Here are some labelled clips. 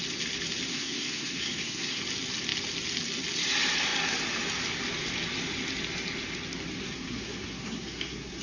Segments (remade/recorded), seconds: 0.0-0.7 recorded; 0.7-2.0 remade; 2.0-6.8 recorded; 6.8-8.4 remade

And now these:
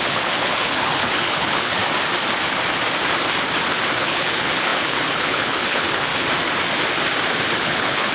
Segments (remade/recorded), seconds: 0.0-1.8 remade; 1.8-4.0 recorded; 4.0-6.1 remade; 6.1-7.6 recorded; 7.6-8.1 remade

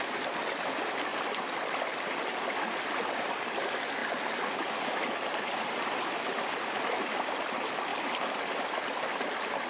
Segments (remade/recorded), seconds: 0.0-1.1 recorded; 1.1-3.6 remade; 3.6-4.0 recorded; 4.0-6.8 remade; 6.8-7.9 recorded; 7.9-9.0 remade; 9.0-9.7 recorded

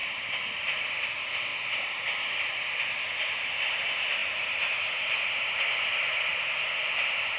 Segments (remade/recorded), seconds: 0.0-1.5 remade; 1.5-2.1 recorded; 2.1-4.2 remade; 4.2-5.9 recorded; 5.9-7.4 remade